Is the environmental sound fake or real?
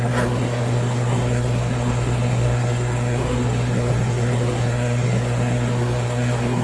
fake